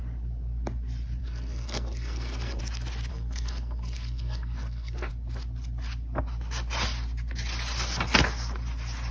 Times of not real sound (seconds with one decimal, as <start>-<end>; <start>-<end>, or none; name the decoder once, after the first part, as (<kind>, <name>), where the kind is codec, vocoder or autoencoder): 1.2-2.6 (codec, SNAC); 3.1-5.1